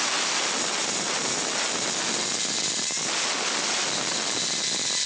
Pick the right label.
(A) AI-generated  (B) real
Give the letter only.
B